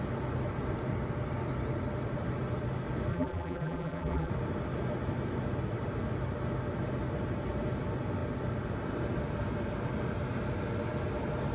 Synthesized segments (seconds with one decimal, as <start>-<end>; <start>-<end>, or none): 3.1-4.3